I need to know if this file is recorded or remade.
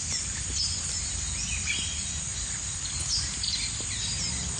recorded